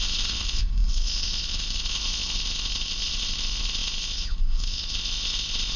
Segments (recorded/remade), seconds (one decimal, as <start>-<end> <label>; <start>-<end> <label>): 0.0-5.8 remade